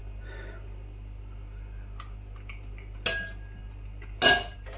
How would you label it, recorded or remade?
recorded